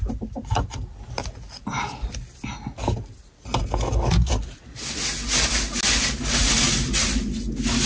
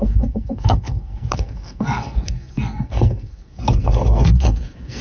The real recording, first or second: first